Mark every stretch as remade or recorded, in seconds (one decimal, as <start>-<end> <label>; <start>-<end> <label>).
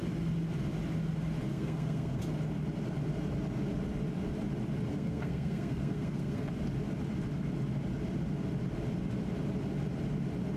0.0-1.5 recorded; 1.5-2.2 remade; 2.2-4.9 recorded; 4.9-6.5 remade; 6.5-10.6 recorded